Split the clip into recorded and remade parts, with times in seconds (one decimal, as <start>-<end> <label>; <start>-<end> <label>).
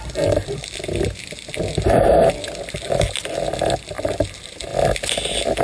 0.0-5.6 recorded